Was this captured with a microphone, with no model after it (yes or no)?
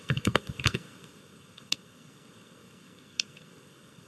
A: no